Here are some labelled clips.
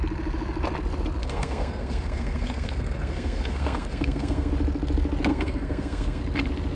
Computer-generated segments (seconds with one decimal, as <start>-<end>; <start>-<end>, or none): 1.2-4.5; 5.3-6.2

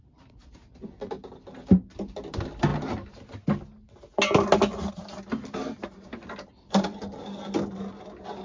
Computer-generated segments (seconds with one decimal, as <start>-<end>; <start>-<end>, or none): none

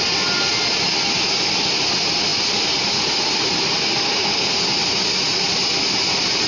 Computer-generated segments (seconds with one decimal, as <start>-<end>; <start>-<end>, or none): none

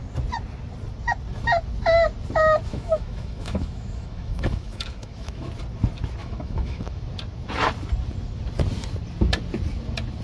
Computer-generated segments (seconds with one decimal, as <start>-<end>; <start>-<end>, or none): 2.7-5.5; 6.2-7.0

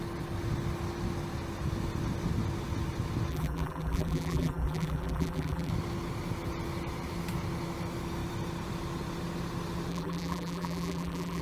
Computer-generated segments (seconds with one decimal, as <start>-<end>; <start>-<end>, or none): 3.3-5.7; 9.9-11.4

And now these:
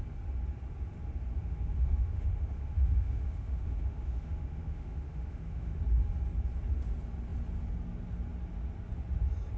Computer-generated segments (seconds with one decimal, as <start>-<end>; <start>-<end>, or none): 1.4-5.8

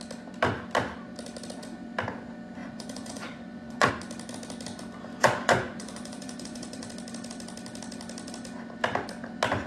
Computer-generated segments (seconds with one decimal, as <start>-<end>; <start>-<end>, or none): 2.6-3.9; 5.2-6.9